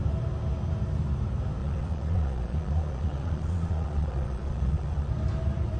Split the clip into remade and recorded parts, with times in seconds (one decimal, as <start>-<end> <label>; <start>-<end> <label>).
0.0-1.6 recorded; 1.6-5.1 remade; 5.1-5.8 recorded